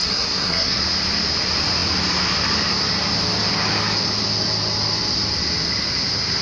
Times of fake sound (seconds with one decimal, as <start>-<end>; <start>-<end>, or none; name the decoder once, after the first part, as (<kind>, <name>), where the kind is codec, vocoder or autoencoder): 0.0-0.8 (codec, SNAC)